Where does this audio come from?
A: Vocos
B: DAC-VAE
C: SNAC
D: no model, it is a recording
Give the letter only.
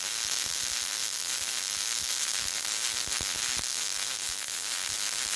D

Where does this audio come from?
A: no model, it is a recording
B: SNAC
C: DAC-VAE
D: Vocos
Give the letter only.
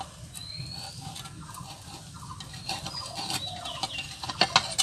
A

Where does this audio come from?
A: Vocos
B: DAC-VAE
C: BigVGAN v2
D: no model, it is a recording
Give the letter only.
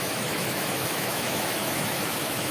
B